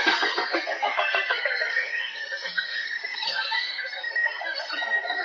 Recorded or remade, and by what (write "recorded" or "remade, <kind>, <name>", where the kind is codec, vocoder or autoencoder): remade, codec, SNAC